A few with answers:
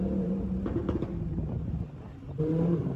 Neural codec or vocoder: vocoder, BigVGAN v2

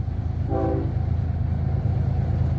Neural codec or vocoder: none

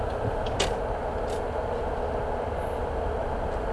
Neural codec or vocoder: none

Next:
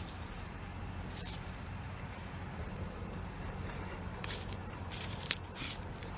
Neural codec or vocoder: vocoder, BigVGAN v2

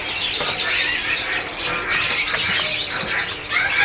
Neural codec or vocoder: none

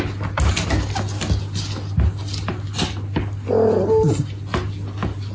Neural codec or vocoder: none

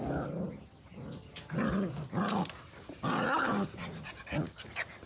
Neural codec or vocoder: none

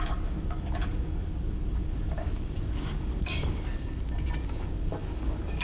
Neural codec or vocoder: codec, DAC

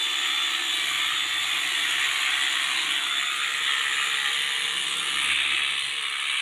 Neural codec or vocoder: none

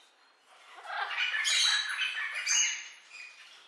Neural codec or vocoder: none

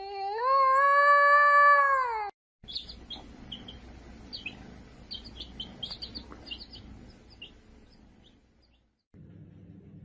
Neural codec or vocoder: none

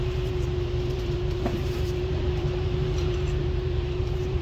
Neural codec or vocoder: vocoder, BigVGAN v2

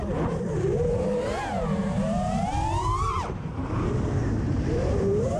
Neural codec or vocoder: vocoder, BigVGAN v2